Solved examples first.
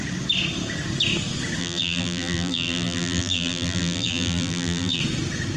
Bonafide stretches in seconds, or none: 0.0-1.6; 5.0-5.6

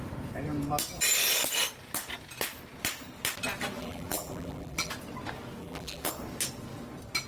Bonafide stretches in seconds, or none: 0.0-3.8; 4.9-5.6; 6.1-7.3